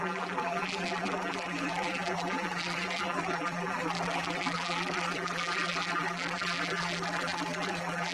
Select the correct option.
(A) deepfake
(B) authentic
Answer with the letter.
A